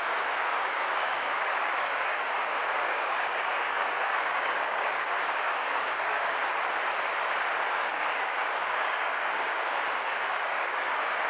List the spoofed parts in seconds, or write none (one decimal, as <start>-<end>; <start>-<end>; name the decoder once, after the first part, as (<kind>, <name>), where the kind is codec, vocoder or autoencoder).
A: 0.0-6.4 (codec, DAC); 7.7-11.3